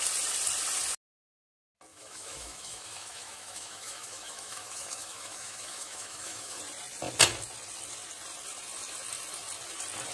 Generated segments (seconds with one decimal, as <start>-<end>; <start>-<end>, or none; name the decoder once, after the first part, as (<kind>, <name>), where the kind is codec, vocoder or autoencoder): 1.9-6.6 (autoencoder, DAC-VAE)